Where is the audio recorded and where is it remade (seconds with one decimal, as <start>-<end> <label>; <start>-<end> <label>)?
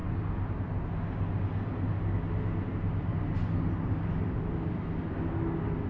0.0-5.9 recorded